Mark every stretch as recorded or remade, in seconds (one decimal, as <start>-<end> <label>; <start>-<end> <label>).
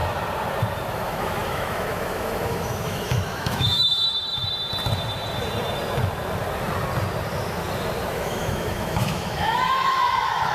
0.0-0.9 recorded; 0.9-3.9 remade; 3.9-8.1 recorded; 8.1-10.5 remade